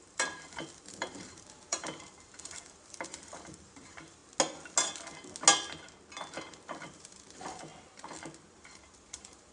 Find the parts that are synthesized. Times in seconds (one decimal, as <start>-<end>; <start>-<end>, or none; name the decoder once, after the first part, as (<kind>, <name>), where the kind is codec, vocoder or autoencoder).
0.0-4.2 (vocoder, BigVGAN v2); 6.4-7.7; 8.5-9.5